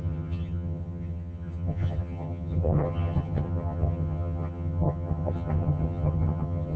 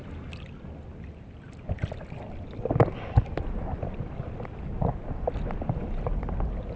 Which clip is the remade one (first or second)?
first